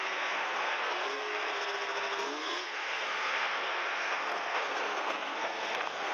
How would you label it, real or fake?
fake